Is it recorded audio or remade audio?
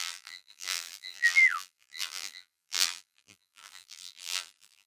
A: remade